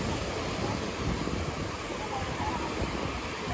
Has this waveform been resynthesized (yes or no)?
no